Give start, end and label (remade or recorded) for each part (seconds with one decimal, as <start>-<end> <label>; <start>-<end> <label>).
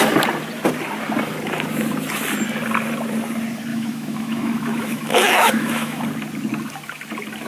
0.0-3.7 recorded; 3.7-6.0 remade; 6.0-7.5 recorded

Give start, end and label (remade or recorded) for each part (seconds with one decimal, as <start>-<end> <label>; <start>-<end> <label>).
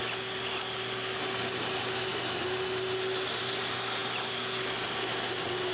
0.0-5.7 recorded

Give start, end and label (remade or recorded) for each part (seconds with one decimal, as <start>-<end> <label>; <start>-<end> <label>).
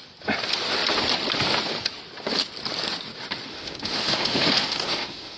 0.0-3.5 recorded; 3.5-5.4 remade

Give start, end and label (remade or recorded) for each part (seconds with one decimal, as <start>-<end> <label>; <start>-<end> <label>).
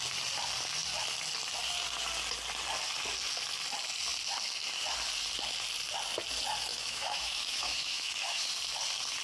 0.0-6.7 recorded; 6.7-8.4 remade; 8.4-9.2 recorded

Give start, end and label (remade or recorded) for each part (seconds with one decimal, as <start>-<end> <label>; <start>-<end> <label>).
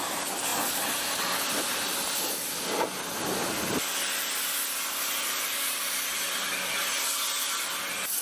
0.0-8.2 recorded